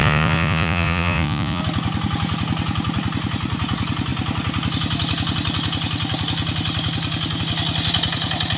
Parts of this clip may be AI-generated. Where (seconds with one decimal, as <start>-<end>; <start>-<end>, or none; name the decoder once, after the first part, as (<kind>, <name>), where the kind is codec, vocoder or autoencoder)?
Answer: 0.0-1.6 (vocoder, Vocos)